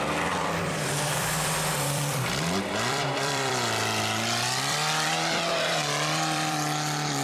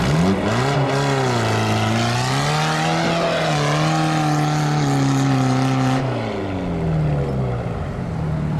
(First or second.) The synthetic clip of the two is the first